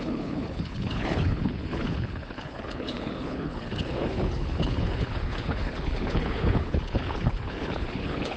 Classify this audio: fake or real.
fake